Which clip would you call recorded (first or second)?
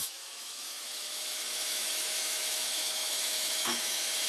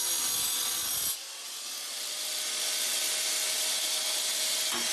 second